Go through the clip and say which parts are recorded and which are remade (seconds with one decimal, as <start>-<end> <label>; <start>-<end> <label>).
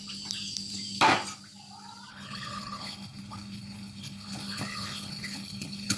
0.0-2.1 recorded; 2.1-6.0 remade